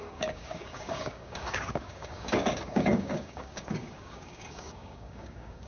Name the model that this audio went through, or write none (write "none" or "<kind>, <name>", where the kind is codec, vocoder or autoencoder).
codec, DAC